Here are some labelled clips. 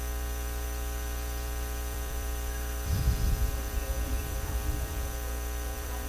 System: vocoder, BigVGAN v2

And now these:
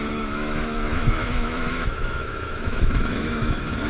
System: autoencoder, DAC-VAE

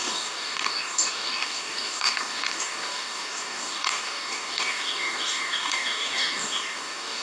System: codec, DAC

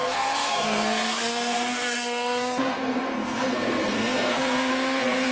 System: codec, SNAC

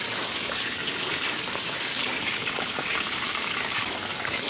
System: codec, DAC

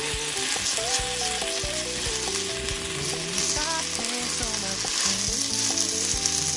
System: none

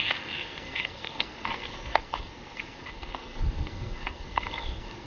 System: codec, SNAC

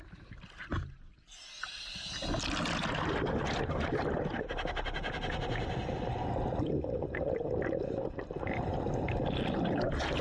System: none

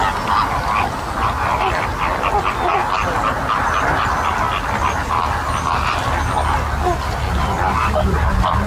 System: none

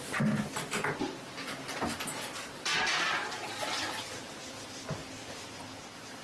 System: none